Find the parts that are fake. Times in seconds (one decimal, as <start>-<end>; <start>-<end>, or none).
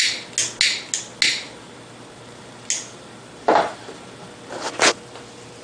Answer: none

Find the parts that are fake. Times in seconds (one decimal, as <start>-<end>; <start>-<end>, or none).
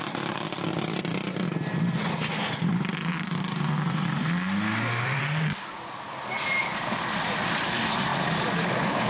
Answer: 1.1-5.2; 8.1-8.7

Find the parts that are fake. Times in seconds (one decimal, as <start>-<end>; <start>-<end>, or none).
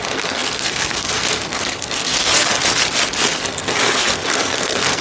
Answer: 0.0-2.6; 3.3-5.0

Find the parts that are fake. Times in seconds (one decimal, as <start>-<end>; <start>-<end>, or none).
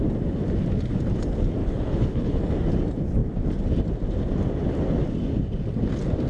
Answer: 1.6-2.5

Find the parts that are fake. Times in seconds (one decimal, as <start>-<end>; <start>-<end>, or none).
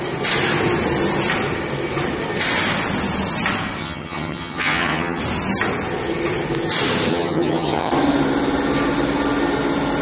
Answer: 3.8-5.2; 7.1-7.9